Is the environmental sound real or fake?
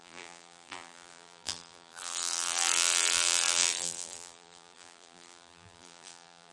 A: fake